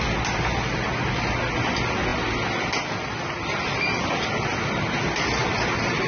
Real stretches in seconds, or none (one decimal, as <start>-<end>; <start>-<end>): 0.0-6.1